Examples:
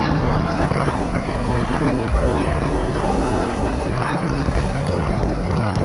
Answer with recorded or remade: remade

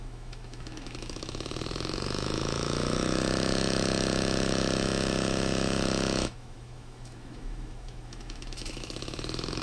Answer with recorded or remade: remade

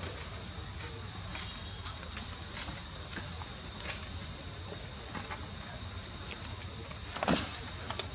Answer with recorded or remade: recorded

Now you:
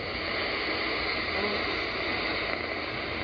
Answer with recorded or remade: recorded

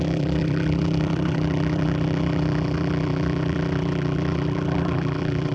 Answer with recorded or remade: remade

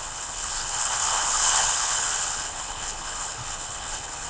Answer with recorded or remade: remade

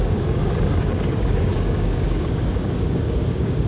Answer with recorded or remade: remade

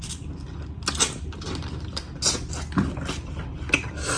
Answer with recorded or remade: recorded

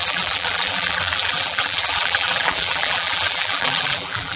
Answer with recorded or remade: remade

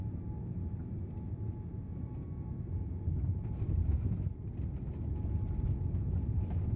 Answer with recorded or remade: recorded